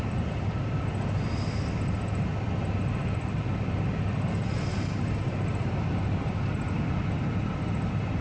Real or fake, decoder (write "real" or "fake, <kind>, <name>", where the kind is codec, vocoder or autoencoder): fake, vocoder, BigVGAN v2